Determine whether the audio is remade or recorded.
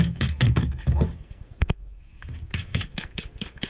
remade